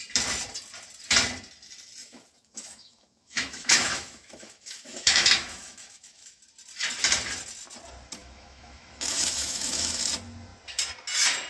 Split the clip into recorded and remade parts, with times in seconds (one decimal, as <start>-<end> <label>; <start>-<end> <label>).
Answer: 0.0-2.0 recorded; 2.0-6.4 remade; 6.4-8.2 recorded; 8.2-10.0 remade; 10.0-11.5 recorded